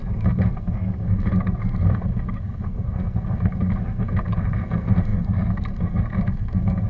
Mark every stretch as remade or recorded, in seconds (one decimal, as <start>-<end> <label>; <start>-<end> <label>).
0.0-6.9 remade